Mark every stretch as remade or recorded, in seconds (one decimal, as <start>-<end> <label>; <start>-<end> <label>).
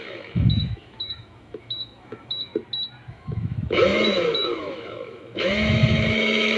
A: 0.0-2.5 remade; 2.5-3.1 recorded; 3.1-6.6 remade